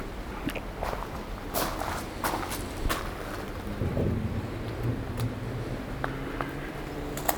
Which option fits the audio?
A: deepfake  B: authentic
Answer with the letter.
B